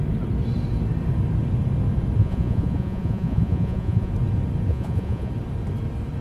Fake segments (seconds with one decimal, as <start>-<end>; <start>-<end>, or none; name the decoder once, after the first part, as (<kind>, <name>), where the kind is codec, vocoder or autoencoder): 2.2-4.1 (vocoder, Vocos); 4.7-5.3